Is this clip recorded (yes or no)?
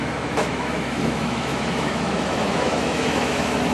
no